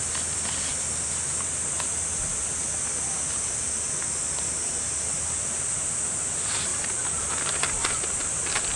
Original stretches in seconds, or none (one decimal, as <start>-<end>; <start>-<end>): 0.0-8.8